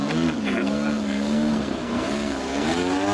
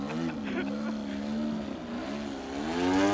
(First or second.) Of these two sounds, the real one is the second